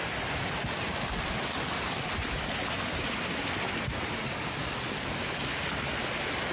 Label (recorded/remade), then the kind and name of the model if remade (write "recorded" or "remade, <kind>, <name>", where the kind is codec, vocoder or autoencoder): recorded